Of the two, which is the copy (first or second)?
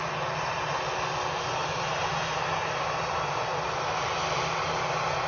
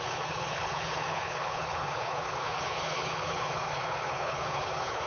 second